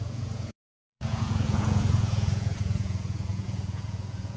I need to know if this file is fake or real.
fake